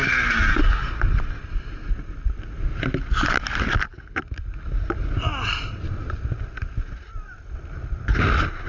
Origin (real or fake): real